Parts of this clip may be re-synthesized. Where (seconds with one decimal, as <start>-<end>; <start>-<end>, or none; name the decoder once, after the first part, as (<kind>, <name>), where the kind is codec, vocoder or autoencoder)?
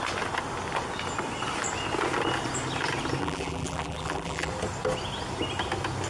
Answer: 3.2-4.5 (vocoder, BigVGAN v2)